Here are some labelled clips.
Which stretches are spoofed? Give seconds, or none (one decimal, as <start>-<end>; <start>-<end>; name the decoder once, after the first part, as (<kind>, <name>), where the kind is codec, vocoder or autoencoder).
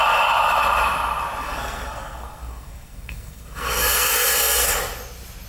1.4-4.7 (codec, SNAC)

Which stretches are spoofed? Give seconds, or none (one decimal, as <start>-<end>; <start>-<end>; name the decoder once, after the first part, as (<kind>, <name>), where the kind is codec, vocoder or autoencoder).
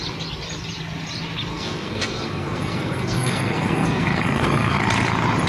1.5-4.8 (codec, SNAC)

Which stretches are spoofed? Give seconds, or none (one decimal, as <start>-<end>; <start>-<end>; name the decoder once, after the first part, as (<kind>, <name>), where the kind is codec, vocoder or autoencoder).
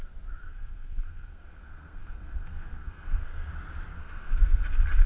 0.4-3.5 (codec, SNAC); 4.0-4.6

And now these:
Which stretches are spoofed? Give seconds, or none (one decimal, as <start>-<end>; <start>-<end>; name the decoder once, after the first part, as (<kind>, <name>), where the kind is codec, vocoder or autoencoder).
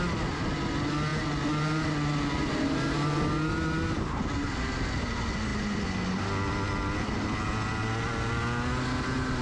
none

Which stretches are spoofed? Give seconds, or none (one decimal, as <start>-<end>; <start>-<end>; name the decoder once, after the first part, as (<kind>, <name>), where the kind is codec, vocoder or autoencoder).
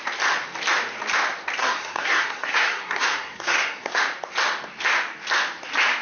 1.6-4.0 (codec, SNAC)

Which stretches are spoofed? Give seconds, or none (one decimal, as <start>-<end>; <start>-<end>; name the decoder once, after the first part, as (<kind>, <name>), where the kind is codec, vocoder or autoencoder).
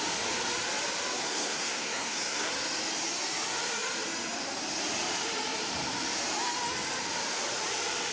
1.2-2.5 (codec, SNAC)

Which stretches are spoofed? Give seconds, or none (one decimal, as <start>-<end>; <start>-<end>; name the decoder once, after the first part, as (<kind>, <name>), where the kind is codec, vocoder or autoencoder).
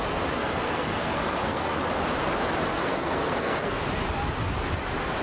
0.4-1.8 (codec, SNAC); 2.7-3.8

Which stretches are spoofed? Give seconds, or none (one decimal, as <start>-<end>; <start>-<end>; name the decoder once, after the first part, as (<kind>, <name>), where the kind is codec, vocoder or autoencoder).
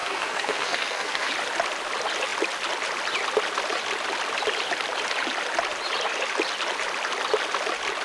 0.0-1.3 (codec, SNAC)